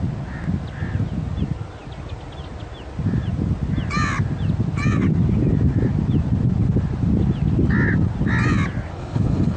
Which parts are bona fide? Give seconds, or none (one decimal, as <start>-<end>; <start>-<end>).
0.0-8.9